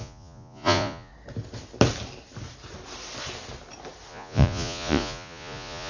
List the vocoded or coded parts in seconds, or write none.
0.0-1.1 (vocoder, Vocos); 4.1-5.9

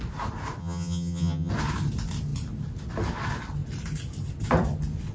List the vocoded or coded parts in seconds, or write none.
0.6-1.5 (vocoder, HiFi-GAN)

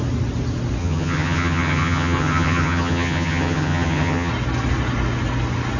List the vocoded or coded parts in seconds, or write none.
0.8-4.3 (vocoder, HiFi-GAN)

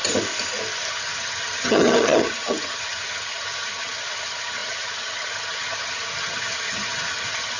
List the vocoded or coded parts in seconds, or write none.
0.9-7.6 (vocoder, HiFi-GAN)

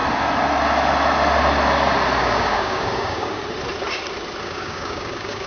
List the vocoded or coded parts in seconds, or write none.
2.2-3.4 (codec, DAC); 4.4-5.5

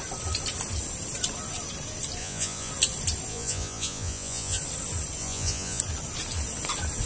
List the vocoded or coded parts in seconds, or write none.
2.2-2.7 (vocoder, Vocos); 3.3-4.6; 5.2-5.8